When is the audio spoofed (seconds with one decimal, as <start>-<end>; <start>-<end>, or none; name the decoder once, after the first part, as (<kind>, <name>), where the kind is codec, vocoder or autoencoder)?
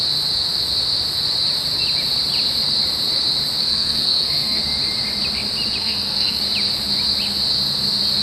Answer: 3.6-4.6 (codec, SNAC); 5.8-6.4